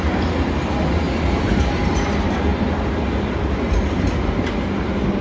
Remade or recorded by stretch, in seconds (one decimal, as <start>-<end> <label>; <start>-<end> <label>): 0.0-5.2 recorded